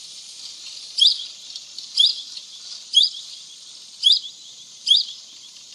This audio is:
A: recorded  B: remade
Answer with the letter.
A